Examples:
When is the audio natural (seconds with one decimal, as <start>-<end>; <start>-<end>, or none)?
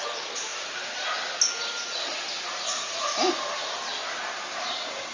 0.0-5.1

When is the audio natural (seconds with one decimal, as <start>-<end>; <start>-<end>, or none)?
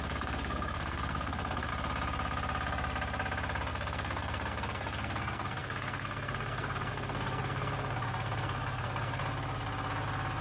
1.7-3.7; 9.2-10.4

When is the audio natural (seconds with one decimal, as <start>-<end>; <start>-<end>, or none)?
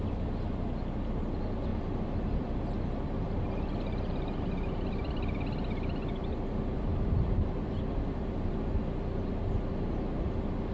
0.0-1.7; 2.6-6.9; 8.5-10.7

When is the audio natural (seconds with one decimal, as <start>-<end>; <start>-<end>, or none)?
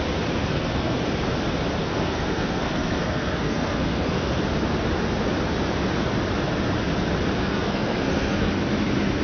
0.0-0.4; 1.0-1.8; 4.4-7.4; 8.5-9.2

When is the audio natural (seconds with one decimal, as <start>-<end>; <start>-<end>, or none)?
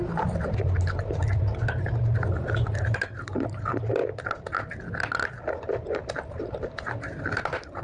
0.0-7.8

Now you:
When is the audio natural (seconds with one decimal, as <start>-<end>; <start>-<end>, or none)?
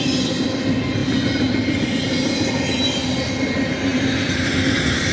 0.0-3.9